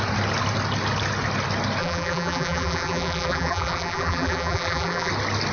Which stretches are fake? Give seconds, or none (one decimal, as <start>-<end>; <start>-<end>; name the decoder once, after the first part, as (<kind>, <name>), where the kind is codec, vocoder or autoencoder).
1.8-5.1 (vocoder, BigVGAN v2)